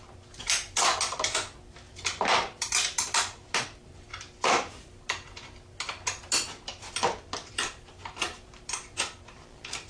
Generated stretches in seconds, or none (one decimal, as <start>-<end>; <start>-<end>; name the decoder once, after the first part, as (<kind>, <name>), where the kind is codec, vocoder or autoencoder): 0.0-9.9 (vocoder, BigVGAN v2)